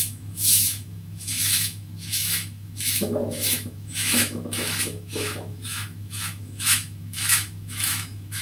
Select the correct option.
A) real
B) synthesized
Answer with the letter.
B